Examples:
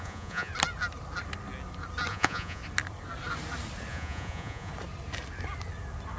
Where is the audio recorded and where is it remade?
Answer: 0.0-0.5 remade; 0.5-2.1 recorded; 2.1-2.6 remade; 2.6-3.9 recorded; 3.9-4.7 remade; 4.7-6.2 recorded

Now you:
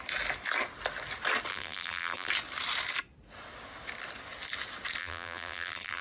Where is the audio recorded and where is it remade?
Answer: 0.0-1.5 recorded; 1.5-2.3 remade; 2.3-5.0 recorded; 5.0-6.0 remade